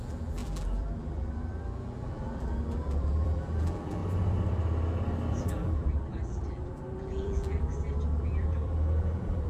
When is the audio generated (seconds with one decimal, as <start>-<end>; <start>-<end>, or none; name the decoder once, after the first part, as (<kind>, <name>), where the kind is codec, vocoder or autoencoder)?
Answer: 0.0-4.0 (vocoder, BigVGAN v2); 5.3-9.5